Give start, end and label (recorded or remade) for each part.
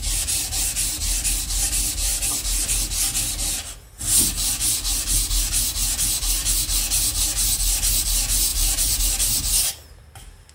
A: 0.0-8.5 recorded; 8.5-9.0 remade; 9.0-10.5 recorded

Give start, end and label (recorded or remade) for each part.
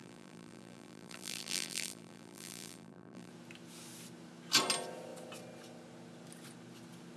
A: 0.0-3.3 remade; 3.3-7.2 recorded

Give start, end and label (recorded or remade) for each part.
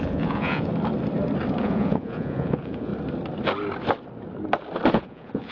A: 0.0-0.7 remade; 0.7-1.6 recorded; 1.6-2.9 remade; 2.9-4.9 recorded; 4.9-5.5 remade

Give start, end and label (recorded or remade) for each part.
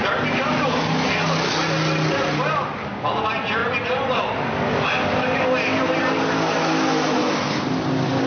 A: 0.0-8.3 recorded